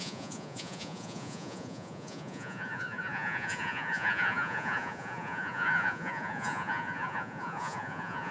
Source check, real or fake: fake